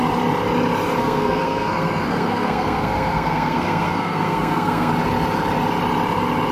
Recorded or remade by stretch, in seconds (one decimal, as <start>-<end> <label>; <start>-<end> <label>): 0.0-1.0 recorded; 1.0-4.9 remade; 4.9-6.5 recorded